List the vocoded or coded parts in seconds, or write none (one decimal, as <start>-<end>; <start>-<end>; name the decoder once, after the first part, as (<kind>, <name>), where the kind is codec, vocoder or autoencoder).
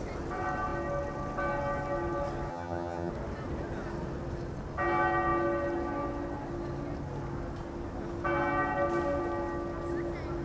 2.5-3.1 (vocoder, HiFi-GAN)